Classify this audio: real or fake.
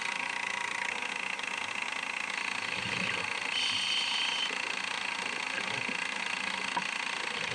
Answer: real